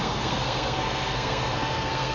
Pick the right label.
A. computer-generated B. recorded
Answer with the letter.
A